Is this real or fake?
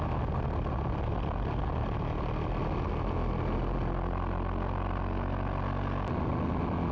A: real